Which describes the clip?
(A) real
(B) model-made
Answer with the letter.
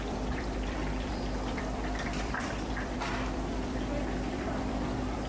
B